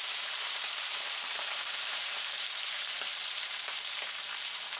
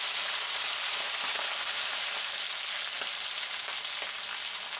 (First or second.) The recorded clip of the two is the second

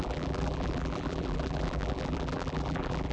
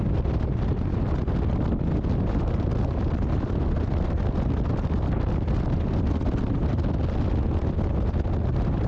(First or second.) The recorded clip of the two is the second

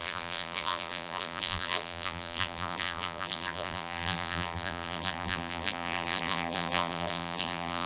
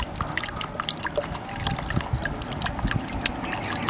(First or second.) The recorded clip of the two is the second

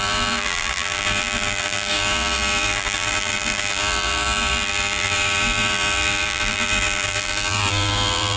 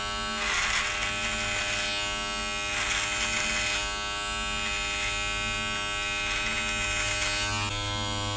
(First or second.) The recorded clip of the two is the second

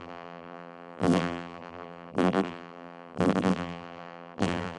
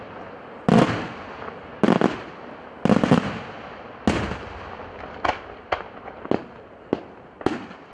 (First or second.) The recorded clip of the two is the second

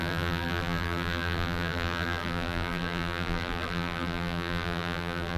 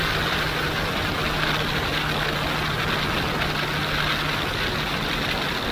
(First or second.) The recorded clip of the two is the second